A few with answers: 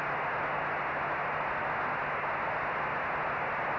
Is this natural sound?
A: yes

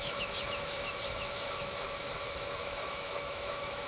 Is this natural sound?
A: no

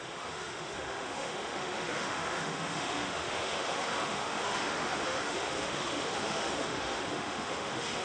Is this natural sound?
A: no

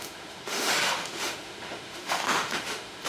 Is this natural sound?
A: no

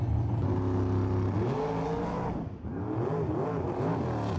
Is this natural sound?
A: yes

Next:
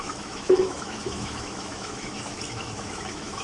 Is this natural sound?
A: no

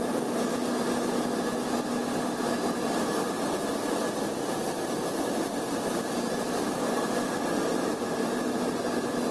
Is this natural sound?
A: yes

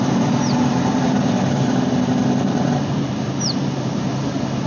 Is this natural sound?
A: yes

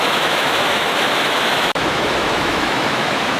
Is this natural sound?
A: no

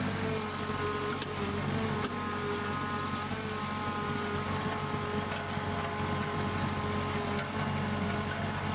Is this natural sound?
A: yes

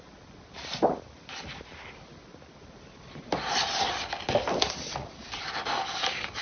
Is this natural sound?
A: yes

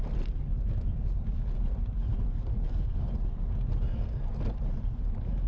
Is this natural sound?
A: yes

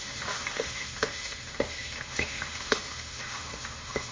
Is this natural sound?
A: no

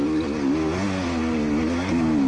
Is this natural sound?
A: yes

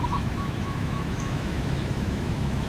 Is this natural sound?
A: no